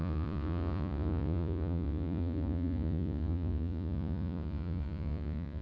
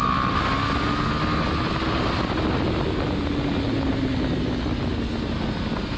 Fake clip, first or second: first